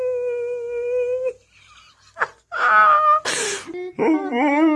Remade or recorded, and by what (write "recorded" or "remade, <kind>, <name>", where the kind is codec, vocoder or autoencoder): recorded